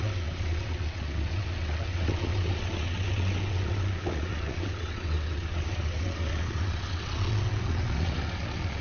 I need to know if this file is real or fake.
fake